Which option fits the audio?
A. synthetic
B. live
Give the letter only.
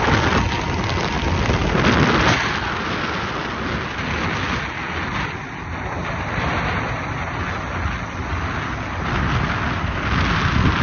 B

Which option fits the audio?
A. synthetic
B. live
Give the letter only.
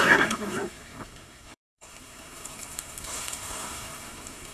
A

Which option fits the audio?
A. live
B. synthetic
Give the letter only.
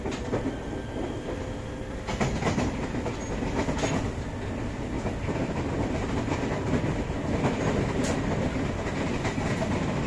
A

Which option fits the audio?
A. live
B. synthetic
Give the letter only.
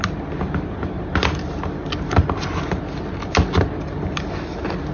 A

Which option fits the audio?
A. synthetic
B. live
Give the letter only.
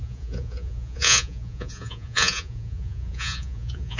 A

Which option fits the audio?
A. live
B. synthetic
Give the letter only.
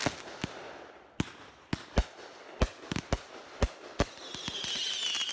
A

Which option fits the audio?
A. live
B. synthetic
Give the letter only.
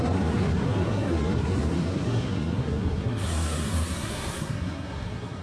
B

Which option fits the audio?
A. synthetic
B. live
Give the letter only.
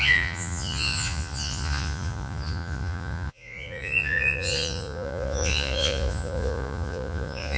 A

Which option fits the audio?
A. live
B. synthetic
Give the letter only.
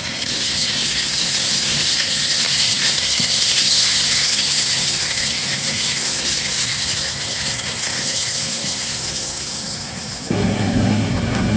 B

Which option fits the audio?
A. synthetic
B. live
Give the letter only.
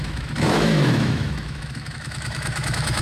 A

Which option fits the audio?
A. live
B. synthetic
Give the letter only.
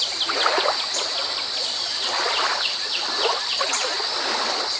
A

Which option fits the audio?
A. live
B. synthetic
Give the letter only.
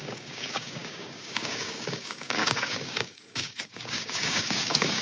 B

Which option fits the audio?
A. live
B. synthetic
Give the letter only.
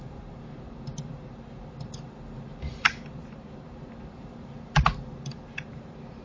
B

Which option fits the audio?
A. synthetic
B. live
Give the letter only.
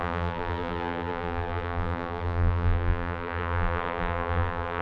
A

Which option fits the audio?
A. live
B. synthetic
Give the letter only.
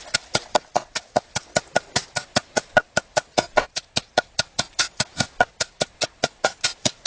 A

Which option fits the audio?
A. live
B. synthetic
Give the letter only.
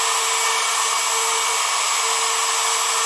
A